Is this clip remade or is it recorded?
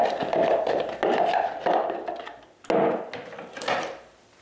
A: recorded